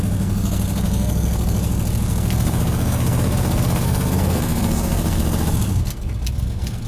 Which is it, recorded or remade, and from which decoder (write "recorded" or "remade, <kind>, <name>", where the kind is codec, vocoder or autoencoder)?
remade, codec, SNAC